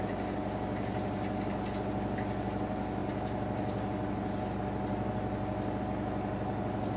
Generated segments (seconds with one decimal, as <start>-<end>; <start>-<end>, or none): none